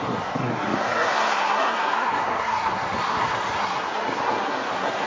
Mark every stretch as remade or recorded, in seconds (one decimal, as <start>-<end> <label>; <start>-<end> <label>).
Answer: 0.0-5.1 remade